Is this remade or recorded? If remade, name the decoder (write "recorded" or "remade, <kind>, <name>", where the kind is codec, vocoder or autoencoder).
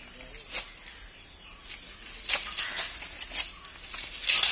recorded